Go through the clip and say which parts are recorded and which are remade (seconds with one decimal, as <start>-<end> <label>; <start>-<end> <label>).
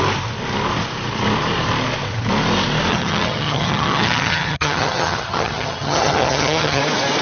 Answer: 0.0-2.9 recorded; 2.9-6.8 remade; 6.8-7.2 recorded